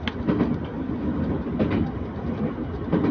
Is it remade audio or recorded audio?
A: recorded